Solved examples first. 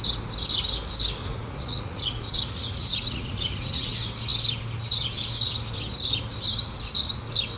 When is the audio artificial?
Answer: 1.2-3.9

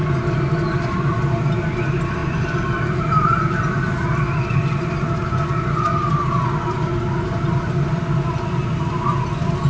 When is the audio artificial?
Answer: none

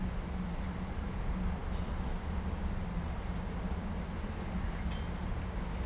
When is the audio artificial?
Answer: none

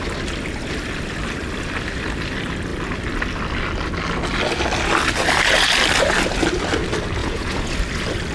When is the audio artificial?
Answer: 7.2-7.7

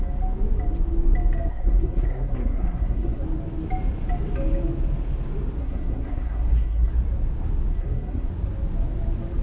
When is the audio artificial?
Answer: 1.5-3.2; 5.6-6.9; 7.7-8.3

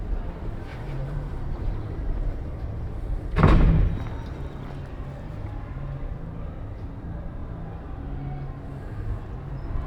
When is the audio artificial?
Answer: 0.7-4.0

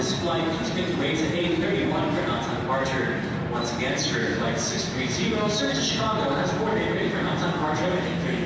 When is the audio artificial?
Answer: 4.2-5.6; 6.7-8.5